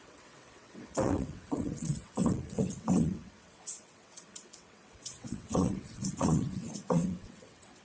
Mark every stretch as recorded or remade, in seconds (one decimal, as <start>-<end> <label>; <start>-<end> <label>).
0.0-7.8 remade